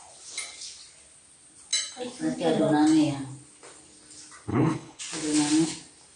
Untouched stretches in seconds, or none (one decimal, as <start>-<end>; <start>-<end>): 0.0-4.5; 5.0-6.2